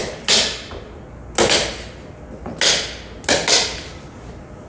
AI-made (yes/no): no